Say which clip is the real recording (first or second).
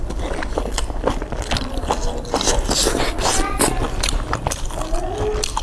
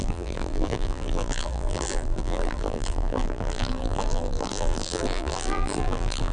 first